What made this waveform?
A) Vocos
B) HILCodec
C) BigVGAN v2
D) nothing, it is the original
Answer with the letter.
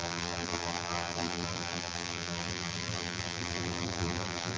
C